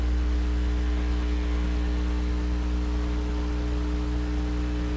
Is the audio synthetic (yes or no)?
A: no